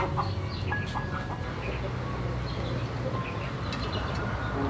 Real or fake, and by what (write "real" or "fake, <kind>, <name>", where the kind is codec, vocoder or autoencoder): real